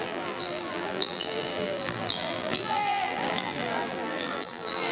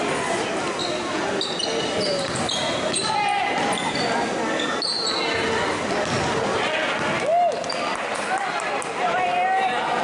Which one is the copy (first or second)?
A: first